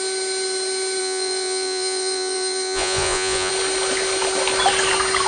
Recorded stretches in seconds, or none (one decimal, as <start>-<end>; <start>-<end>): 0.0-1.0; 3.5-5.3